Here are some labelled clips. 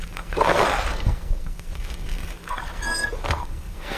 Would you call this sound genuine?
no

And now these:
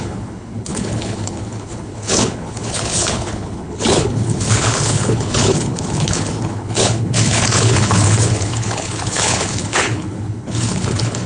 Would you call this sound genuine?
no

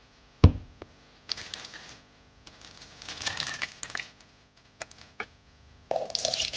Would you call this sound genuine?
yes